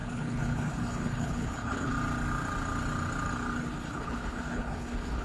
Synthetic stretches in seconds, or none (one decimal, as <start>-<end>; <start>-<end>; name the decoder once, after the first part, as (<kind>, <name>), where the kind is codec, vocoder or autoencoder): 0.0-1.9 (codec, HILCodec); 3.6-5.2